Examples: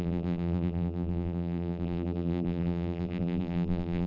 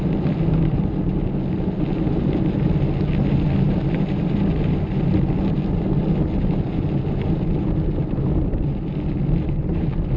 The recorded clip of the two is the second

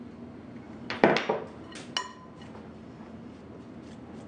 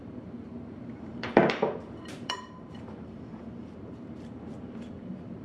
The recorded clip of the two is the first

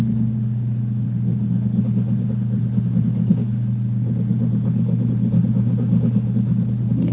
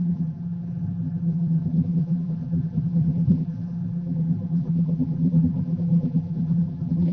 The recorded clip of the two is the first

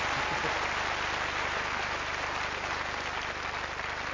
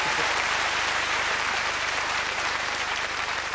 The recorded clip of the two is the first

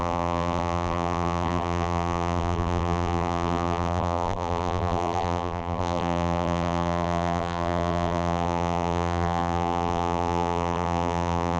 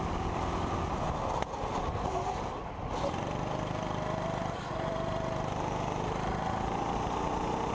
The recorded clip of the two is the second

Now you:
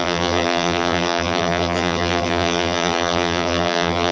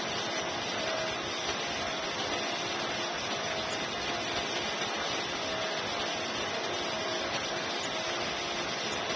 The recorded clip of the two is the second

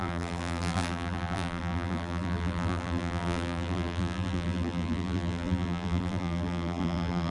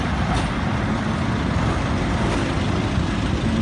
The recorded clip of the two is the second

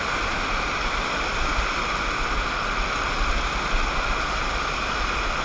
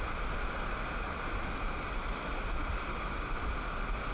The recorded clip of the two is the first